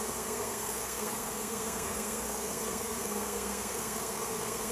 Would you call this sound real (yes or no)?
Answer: no